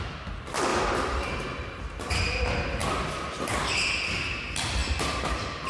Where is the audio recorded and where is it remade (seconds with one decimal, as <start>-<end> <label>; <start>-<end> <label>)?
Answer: 0.0-0.7 recorded; 0.7-1.3 remade; 1.3-5.7 recorded